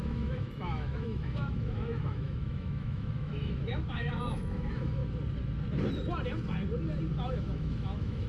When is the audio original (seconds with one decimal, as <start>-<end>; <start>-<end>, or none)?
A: 5.0-7.3